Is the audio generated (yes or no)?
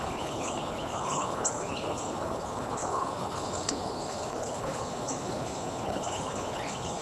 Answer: yes